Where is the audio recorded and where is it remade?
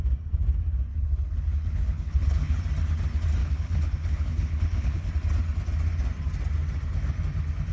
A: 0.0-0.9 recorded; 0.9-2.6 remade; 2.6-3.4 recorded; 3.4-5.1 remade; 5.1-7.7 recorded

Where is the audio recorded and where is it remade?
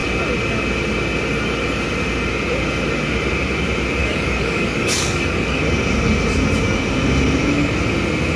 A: 0.0-4.0 recorded; 4.0-5.6 remade; 5.6-8.4 recorded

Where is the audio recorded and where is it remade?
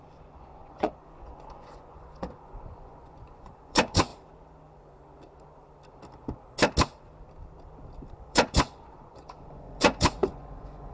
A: 0.0-4.1 remade; 4.1-8.1 recorded; 8.1-10.9 remade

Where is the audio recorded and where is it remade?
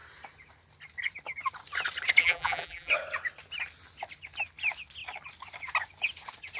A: 0.0-2.2 recorded; 2.2-2.9 remade; 2.9-6.6 recorded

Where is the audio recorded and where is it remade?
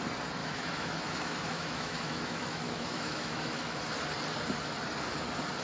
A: 0.0-0.4 recorded; 0.4-3.8 remade; 3.8-5.6 recorded